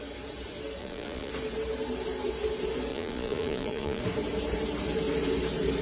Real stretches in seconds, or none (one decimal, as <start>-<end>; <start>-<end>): 0.0-0.8; 1.3-2.9; 4.0-5.8